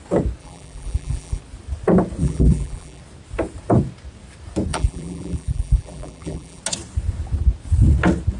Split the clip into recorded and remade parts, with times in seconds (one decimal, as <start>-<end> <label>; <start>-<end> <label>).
0.0-0.4 recorded; 0.4-1.4 remade; 1.4-2.2 recorded; 2.2-3.0 remade; 3.0-4.7 recorded; 4.7-6.6 remade; 6.6-8.4 recorded